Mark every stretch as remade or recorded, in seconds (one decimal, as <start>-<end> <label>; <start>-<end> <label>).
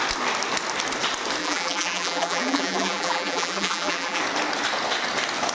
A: 0.0-1.4 recorded; 1.4-4.2 remade; 4.2-5.5 recorded